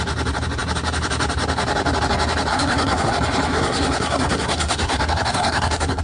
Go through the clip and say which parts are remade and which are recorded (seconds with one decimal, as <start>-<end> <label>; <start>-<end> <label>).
0.0-2.5 recorded; 2.5-3.1 remade; 3.1-3.5 recorded; 3.5-6.0 remade